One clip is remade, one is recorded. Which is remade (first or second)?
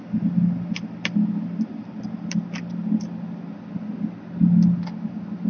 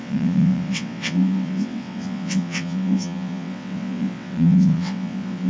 second